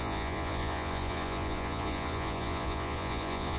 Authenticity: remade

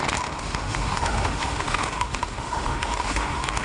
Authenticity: remade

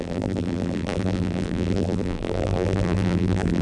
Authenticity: remade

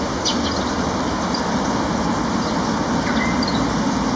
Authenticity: recorded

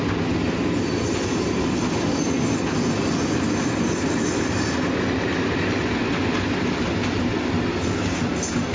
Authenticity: recorded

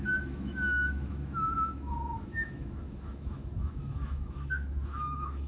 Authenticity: remade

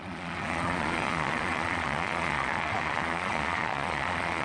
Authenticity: remade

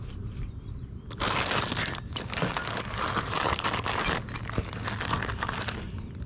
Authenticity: recorded